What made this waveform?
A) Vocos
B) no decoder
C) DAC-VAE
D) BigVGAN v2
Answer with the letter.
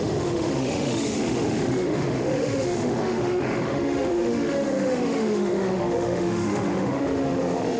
C